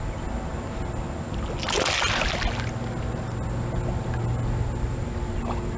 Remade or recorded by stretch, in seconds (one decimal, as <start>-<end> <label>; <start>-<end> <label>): 0.0-5.8 recorded